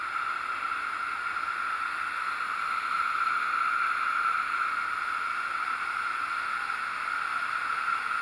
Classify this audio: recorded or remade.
recorded